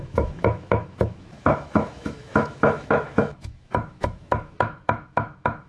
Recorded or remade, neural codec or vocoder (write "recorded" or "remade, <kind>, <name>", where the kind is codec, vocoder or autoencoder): remade, autoencoder, DAC-VAE